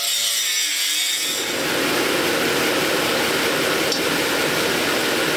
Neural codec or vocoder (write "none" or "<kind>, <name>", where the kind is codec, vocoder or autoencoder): none